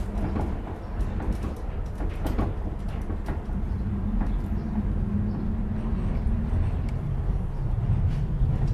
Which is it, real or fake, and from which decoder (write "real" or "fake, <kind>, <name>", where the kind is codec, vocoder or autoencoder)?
real